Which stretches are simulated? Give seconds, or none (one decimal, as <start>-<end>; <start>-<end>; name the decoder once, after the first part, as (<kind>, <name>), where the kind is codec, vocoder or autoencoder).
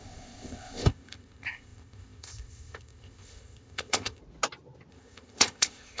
0.0-4.2 (codec, ZipCodec); 4.9-6.0